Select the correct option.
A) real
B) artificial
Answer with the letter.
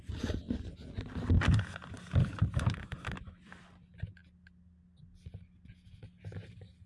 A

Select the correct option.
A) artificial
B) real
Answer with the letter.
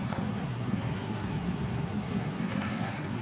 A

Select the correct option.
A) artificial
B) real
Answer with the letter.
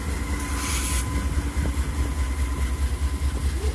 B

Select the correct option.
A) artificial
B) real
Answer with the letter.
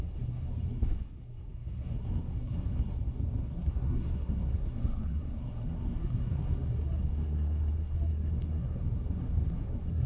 A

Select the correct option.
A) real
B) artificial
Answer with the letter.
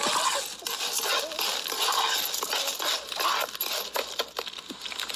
A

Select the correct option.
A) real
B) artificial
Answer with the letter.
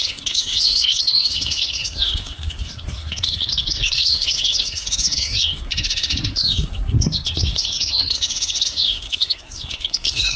B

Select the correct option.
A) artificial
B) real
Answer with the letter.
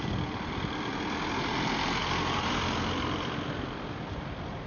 B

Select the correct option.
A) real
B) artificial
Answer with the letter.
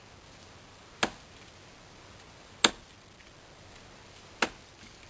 A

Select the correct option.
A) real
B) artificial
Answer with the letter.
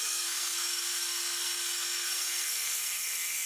B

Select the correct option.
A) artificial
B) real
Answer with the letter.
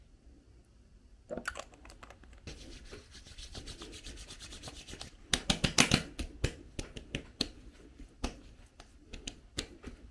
B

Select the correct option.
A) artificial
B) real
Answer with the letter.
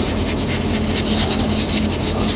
B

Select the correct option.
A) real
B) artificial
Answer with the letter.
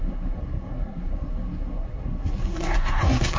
B